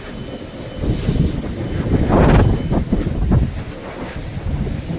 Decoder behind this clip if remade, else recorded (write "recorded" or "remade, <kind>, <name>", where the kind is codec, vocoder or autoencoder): recorded